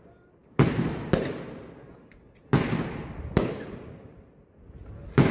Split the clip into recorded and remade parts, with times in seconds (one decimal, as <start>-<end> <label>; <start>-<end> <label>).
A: 0.0-5.3 recorded